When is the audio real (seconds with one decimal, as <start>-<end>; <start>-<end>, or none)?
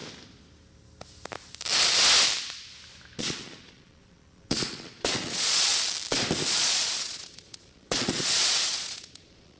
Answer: 0.0-3.2; 5.7-6.5